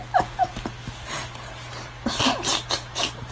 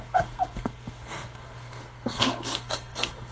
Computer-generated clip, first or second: second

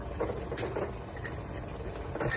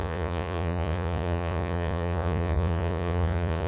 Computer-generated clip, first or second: second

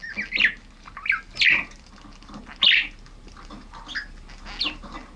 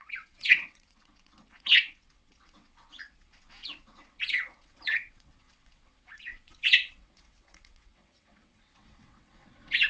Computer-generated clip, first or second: second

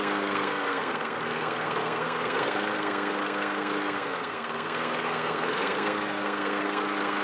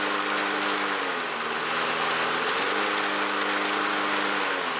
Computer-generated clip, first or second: first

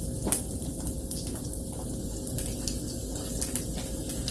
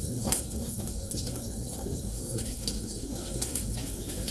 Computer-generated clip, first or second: second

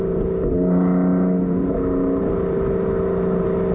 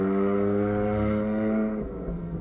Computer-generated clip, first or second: second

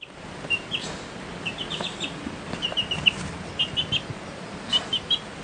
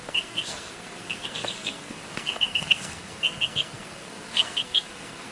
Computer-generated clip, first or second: second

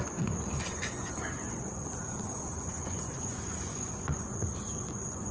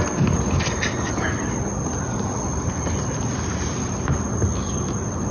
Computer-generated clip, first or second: first